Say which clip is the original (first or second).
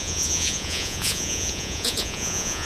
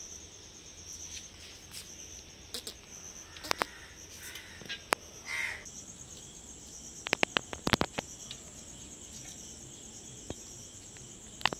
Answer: second